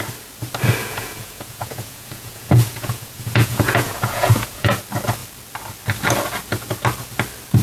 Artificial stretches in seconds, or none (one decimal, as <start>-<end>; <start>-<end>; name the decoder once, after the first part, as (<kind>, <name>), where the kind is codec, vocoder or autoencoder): 0.8-4.8 (vocoder, Vocos)